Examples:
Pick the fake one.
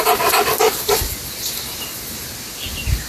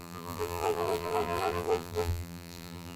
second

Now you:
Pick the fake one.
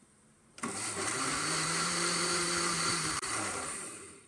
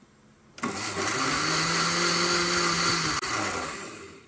first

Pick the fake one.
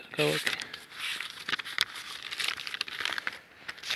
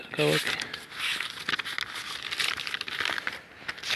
first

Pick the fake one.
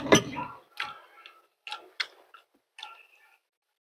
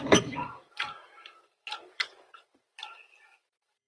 second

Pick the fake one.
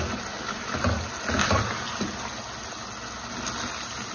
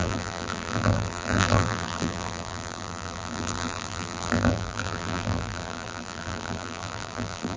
second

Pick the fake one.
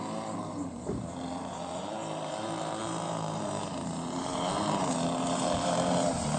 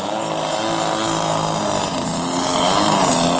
first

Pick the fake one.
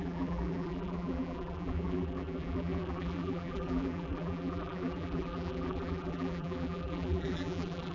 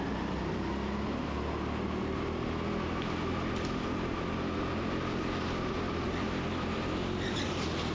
first